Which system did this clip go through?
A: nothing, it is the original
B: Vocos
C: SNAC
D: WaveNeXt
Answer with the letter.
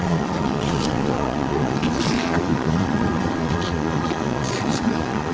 B